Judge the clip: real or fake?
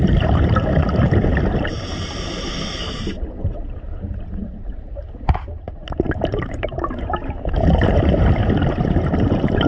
fake